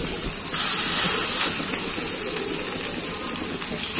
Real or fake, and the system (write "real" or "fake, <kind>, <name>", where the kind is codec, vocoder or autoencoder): real